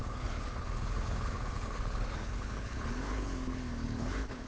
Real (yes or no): no